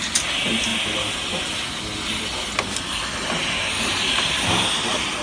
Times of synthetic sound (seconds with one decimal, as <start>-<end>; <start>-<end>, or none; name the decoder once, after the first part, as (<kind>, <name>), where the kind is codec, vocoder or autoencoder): none